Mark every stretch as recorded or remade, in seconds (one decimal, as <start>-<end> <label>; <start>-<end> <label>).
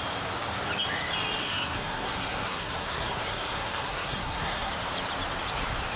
0.0-1.4 recorded; 1.4-4.7 remade; 4.7-6.0 recorded